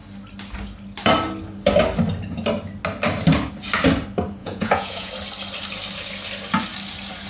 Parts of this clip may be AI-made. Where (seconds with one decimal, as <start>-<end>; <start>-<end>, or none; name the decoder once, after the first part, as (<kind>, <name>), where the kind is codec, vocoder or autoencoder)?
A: 4.4-5.1 (vocoder, Vocos)